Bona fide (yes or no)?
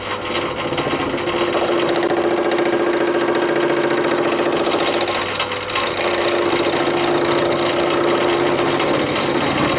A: yes